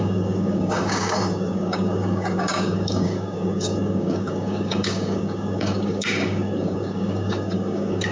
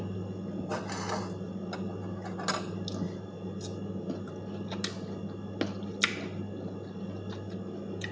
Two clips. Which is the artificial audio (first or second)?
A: first